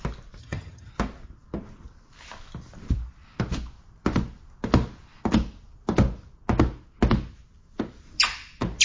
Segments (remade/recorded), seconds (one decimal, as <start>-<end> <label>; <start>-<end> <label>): 0.0-0.4 recorded; 0.4-0.9 remade; 0.9-8.8 recorded

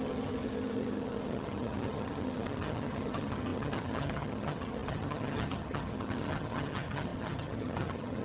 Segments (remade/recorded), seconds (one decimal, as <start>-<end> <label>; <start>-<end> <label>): 0.0-8.2 remade